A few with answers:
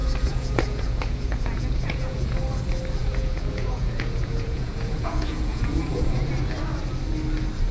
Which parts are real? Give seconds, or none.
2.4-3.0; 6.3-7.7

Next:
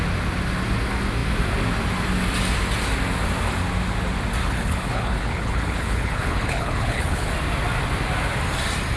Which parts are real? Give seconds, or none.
0.0-4.4; 7.3-9.0

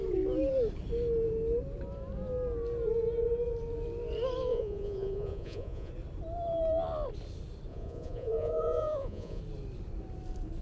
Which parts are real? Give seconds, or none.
0.0-4.5; 5.9-7.7; 9.4-10.6

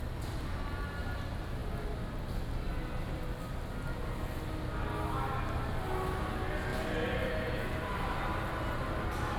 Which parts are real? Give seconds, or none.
0.0-9.4

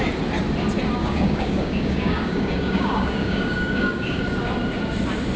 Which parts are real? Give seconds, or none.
0.0-1.0; 4.2-5.4

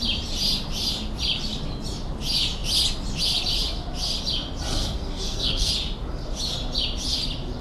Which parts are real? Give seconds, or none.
0.0-4.7; 5.7-7.6

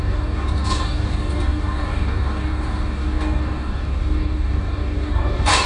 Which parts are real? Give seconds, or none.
none